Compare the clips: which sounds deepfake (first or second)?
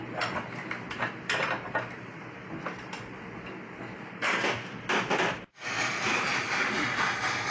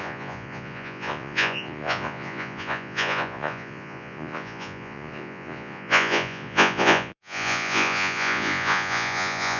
second